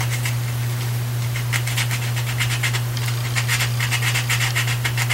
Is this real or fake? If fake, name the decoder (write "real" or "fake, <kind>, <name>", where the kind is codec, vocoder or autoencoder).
real